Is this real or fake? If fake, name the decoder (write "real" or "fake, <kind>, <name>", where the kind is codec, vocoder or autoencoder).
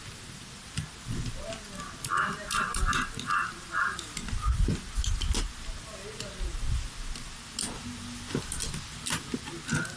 real